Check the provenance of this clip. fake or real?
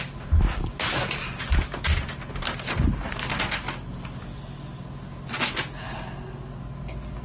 real